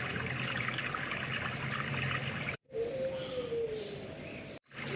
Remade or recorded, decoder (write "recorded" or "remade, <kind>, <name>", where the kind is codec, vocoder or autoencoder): recorded